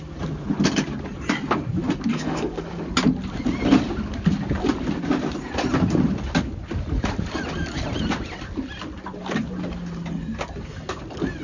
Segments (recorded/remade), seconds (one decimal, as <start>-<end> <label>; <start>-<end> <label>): 0.0-2.1 recorded; 2.1-2.8 remade; 2.8-11.4 recorded